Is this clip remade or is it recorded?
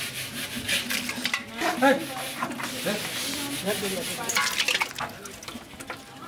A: recorded